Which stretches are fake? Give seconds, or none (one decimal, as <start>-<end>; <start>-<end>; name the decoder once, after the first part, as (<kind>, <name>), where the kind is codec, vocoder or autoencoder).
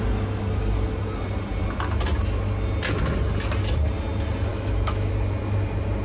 4.5-5.1 (autoencoder, DAC-VAE)